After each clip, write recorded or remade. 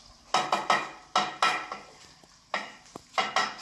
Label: recorded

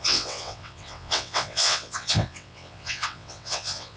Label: remade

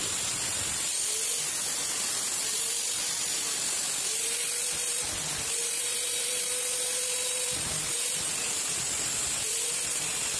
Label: recorded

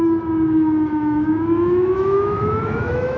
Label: remade